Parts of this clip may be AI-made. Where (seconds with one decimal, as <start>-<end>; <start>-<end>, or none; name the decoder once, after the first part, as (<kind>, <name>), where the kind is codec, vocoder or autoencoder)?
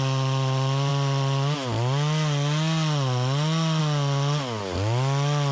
none